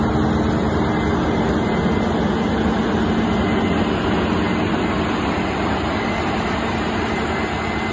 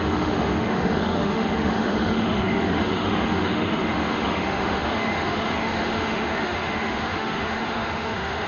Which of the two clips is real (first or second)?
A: first